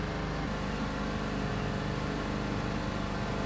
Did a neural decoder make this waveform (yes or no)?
no